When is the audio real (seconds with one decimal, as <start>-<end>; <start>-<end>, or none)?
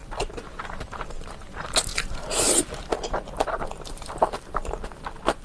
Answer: 0.0-0.6